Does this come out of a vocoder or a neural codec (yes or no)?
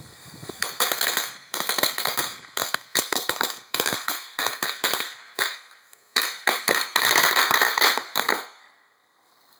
yes